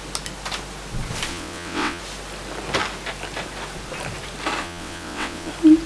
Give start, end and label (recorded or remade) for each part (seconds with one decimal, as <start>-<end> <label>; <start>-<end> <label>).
0.0-1.3 recorded; 1.3-2.0 remade; 2.0-4.6 recorded; 4.6-5.5 remade; 5.5-5.9 recorded

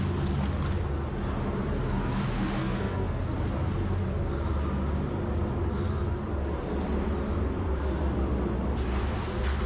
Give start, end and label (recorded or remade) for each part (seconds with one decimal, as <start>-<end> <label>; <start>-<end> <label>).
0.0-2.6 recorded; 2.6-3.2 remade; 3.2-9.7 recorded